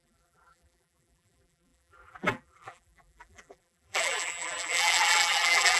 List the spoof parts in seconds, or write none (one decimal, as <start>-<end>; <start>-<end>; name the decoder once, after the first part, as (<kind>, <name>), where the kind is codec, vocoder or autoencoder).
0.0-5.8 (vocoder, BigVGAN v2)